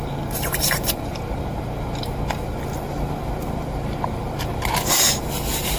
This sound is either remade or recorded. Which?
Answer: recorded